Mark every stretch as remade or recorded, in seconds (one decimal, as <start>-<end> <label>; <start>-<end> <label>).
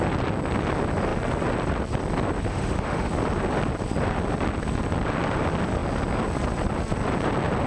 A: 0.0-2.5 recorded; 2.5-3.1 remade; 3.1-7.7 recorded